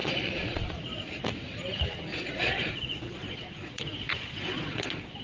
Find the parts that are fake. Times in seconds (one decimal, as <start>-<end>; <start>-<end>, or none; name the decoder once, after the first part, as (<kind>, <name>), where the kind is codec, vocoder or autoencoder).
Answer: 0.0-1.2 (vocoder, Vocos); 2.1-5.2